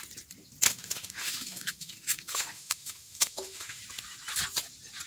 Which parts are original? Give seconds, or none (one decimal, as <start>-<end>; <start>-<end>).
0.0-0.7; 3.8-5.1

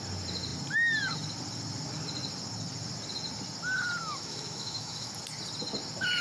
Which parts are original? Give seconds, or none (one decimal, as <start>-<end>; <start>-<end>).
0.0-4.0; 5.2-6.2

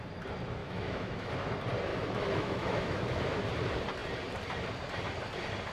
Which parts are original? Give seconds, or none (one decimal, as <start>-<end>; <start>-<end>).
0.0-0.6; 1.3-1.9; 3.4-5.7